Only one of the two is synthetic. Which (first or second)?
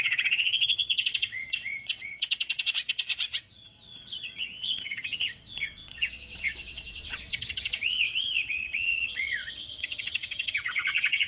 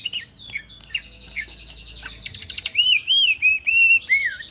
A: first